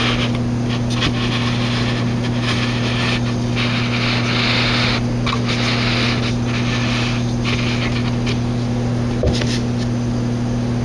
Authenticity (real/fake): real